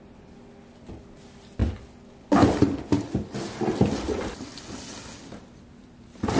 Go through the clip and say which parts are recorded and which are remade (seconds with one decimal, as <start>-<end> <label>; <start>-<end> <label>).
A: 0.0-6.4 recorded